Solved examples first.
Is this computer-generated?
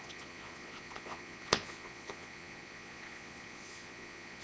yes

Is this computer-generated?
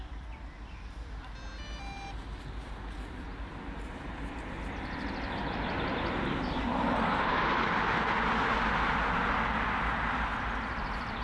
no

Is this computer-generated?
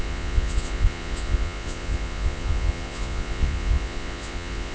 yes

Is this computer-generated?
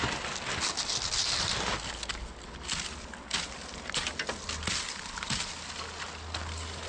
no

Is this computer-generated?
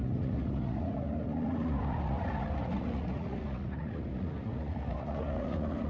yes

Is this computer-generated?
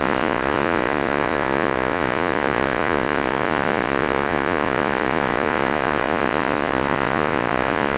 yes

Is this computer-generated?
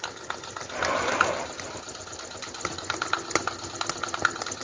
no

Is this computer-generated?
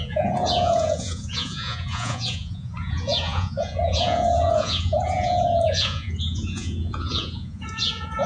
yes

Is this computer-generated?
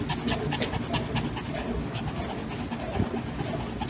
no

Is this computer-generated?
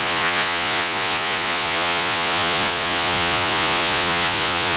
yes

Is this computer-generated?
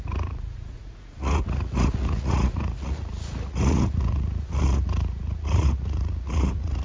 yes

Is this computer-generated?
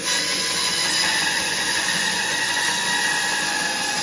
yes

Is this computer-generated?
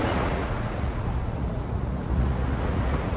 yes